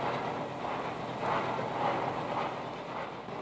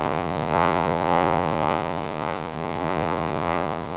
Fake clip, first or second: second